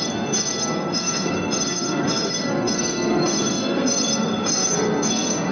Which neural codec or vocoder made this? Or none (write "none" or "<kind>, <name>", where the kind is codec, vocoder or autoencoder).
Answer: codec, SNAC